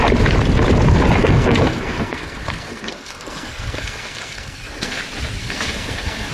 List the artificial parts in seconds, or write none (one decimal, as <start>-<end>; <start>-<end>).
1.2-5.0; 5.4-6.3